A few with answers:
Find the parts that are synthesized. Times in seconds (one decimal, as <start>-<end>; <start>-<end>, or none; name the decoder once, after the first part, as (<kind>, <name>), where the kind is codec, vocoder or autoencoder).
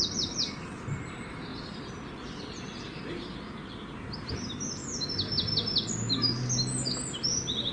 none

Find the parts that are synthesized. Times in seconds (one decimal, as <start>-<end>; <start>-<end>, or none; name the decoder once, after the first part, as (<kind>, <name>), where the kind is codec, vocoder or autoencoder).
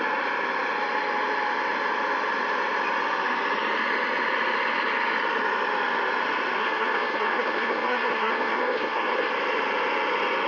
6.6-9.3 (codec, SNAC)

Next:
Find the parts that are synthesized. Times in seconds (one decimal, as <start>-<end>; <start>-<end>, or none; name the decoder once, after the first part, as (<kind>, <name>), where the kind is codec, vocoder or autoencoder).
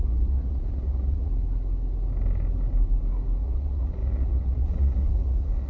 0.0-1.3 (vocoder, Vocos); 3.4-5.7